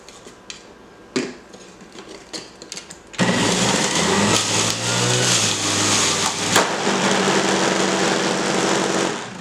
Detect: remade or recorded recorded